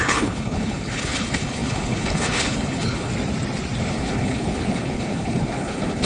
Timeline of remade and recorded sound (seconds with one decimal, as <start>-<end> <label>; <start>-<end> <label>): 0.0-3.1 remade; 3.1-3.8 recorded; 3.8-6.1 remade